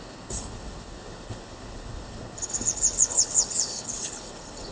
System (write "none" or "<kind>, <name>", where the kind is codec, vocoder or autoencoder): codec, HILCodec